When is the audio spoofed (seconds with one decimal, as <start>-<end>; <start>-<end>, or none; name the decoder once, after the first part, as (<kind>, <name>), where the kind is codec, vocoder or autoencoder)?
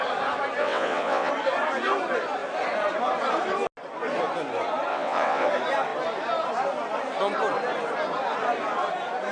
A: 0.6-1.3 (vocoder, WaveNeXt); 4.9-5.5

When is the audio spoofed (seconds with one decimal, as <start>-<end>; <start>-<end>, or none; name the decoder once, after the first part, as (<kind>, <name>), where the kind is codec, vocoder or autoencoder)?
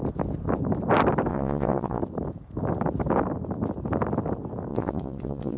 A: 1.3-2.0 (vocoder, WaveNeXt); 4.7-5.6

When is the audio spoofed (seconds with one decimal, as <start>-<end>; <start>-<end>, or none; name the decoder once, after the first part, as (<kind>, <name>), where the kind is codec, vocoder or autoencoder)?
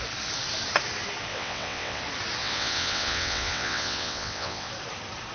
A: 1.3-2.0 (vocoder, WaveNeXt); 2.4-4.7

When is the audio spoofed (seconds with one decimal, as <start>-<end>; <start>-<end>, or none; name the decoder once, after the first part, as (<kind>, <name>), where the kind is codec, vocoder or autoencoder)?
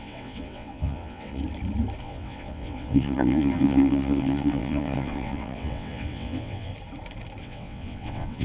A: 0.0-1.4 (vocoder, WaveNeXt); 2.0-6.7; 7.4-8.4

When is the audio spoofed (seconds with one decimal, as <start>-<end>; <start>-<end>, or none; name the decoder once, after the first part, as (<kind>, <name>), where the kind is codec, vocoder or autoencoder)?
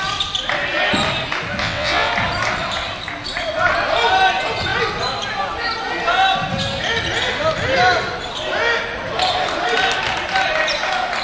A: 1.6-2.1 (vocoder, WaveNeXt)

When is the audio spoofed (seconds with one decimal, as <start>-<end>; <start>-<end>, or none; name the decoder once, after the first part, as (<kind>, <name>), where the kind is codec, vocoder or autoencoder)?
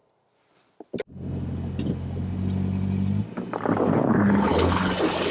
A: none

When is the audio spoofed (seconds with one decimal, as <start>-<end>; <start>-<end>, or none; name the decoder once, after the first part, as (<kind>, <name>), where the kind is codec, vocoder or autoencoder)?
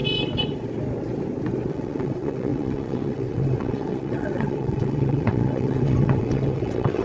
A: 1.7-7.0 (vocoder, WaveNeXt)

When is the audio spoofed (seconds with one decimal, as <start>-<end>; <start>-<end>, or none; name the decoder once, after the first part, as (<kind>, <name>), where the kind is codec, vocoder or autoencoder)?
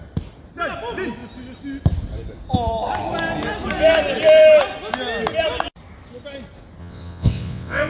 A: 6.8-7.9 (vocoder, WaveNeXt)